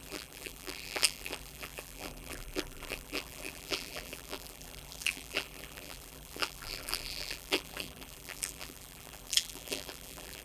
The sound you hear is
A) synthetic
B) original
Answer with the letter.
A